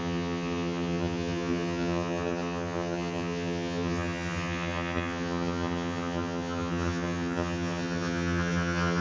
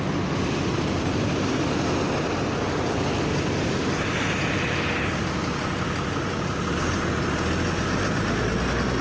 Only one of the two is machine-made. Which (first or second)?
first